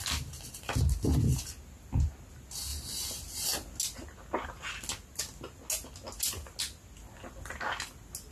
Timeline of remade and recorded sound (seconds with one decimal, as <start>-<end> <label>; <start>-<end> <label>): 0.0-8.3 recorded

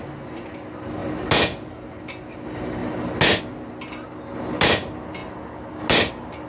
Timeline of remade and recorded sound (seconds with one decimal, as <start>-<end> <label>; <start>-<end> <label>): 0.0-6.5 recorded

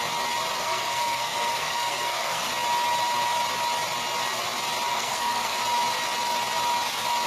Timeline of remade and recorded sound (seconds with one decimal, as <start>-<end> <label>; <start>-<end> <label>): 0.0-0.6 recorded; 0.6-2.5 remade; 2.5-4.9 recorded; 4.9-5.6 remade; 5.6-7.3 recorded